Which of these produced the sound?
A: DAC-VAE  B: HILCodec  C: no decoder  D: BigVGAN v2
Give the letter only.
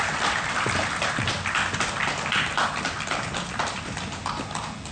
C